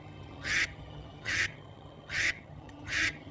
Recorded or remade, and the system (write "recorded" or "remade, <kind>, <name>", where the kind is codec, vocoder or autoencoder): remade, vocoder, HiFi-GAN